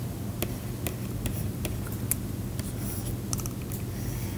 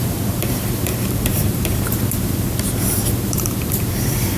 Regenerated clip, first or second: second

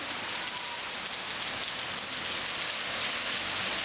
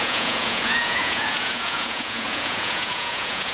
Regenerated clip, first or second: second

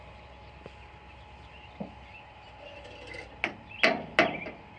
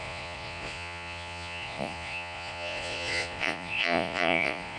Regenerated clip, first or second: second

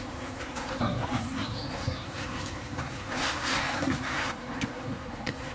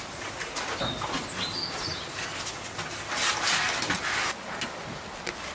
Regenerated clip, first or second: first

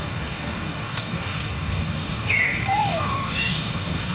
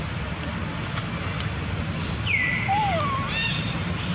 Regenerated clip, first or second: first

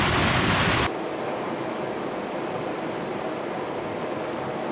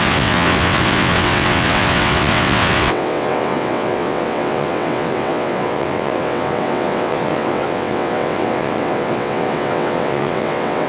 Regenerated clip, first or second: second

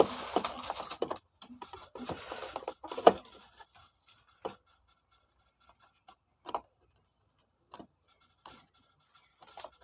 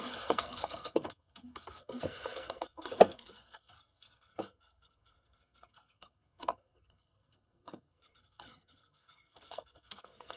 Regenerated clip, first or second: second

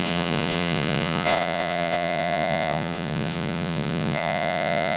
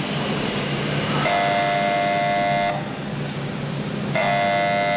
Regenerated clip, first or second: first